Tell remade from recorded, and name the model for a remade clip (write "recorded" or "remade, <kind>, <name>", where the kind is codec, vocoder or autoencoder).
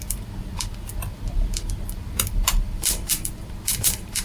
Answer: remade, vocoder, BigVGAN v2